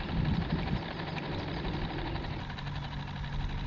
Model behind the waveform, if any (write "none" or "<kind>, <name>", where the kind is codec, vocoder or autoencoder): none